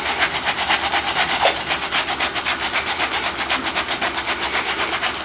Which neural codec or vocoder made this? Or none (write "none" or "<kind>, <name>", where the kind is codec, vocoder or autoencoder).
none